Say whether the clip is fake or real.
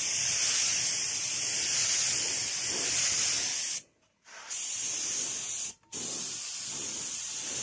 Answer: real